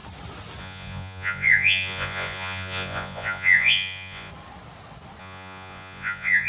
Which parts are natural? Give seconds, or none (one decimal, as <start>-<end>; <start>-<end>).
0.0-0.6; 4.3-5.2